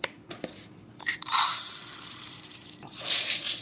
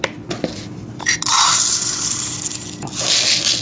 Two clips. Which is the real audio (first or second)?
second